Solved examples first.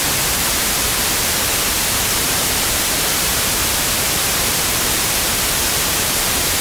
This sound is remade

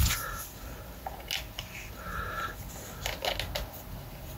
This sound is recorded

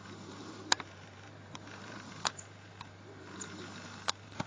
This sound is remade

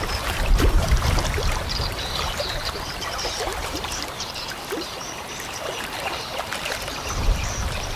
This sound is remade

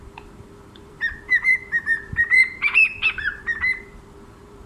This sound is remade